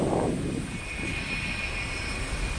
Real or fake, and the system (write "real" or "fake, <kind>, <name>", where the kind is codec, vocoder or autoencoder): real